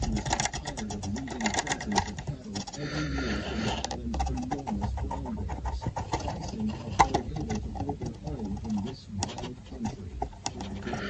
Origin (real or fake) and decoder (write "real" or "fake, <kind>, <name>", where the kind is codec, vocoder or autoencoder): real